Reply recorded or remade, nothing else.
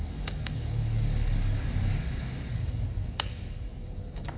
remade